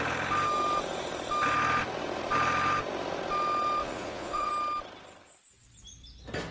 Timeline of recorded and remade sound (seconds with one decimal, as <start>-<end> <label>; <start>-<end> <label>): 0.0-3.8 recorded; 3.8-4.5 remade; 4.5-6.5 recorded